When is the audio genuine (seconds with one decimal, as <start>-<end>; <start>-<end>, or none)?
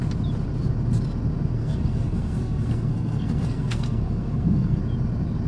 0.0-1.5; 4.8-5.5